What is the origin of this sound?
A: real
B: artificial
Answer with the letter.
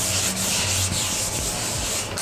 A